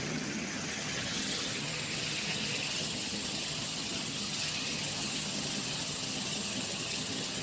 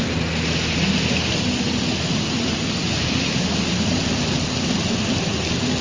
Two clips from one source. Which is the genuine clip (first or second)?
second